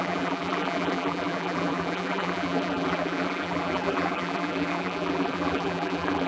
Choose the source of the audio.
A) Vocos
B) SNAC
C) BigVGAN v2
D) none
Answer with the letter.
C